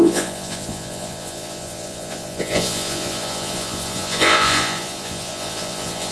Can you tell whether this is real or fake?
fake